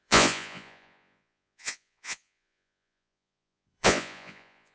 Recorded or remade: remade